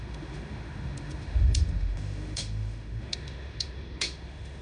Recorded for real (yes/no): no